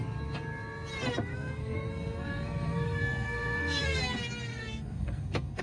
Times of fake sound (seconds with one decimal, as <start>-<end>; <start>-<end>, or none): 1.3-4.0; 4.5-5.6